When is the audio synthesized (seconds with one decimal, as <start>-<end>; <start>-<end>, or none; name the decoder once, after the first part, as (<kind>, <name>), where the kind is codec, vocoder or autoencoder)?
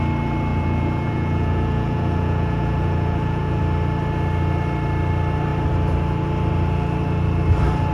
0.5-3.6 (vocoder, Vocos)